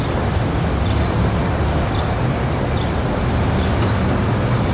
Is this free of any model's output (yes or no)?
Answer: yes